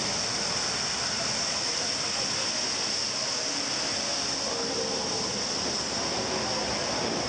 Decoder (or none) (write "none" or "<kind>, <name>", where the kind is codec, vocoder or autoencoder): none